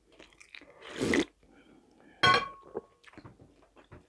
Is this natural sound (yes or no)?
yes